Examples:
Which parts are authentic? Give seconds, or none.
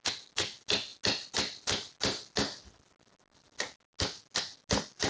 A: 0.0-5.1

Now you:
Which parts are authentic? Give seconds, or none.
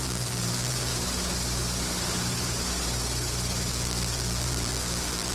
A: 0.9-3.7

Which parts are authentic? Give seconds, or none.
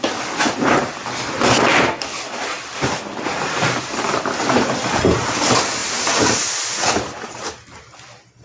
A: 0.0-8.4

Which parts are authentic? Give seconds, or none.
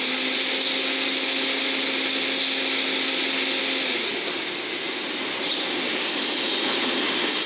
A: 0.0-7.5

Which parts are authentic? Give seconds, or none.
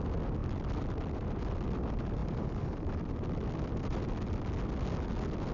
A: 0.0-0.4; 1.4-2.2; 4.5-5.5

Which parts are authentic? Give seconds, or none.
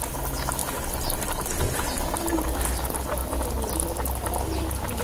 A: 0.0-0.6; 2.3-5.0